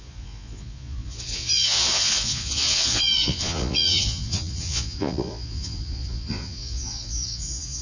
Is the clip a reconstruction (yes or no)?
yes